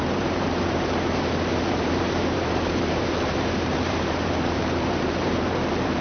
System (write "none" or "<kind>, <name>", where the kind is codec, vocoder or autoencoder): vocoder, BigVGAN v2